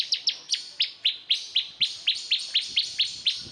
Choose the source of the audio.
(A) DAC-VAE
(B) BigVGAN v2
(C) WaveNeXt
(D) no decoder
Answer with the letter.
D